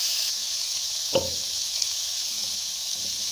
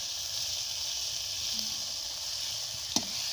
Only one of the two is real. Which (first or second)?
second